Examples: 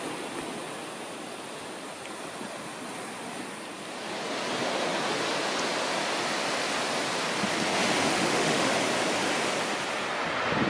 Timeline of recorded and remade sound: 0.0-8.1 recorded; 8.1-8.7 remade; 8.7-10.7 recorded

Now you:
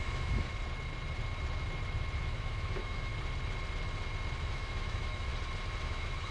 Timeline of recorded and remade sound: 0.0-0.5 remade; 0.5-2.2 recorded; 2.2-3.1 remade; 3.1-4.4 recorded; 4.4-5.3 remade; 5.3-5.8 recorded; 5.8-6.3 remade

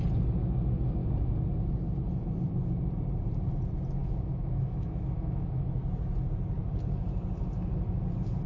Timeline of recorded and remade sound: 0.0-4.0 recorded; 4.0-5.8 remade; 5.8-8.5 recorded

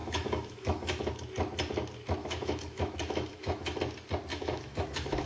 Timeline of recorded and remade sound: 0.0-1.1 remade; 1.1-2.2 recorded; 2.2-3.8 remade; 3.8-4.3 recorded; 4.3-5.3 remade

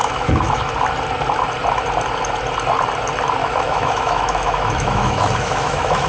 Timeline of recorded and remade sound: 0.0-0.7 remade; 0.7-3.4 recorded; 3.4-6.1 remade

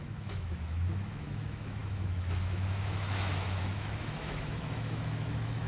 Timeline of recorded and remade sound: 0.0-5.7 remade

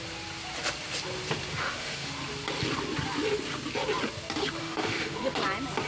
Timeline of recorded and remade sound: 0.0-1.5 recorded; 1.5-2.1 remade; 2.1-4.6 recorded; 4.6-5.3 remade; 5.3-5.9 recorded